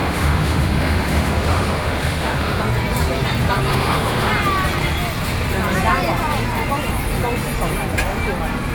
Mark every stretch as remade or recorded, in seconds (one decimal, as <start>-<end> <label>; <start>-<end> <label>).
0.0-2.6 remade; 2.6-3.7 recorded; 3.7-4.3 remade; 4.3-8.7 recorded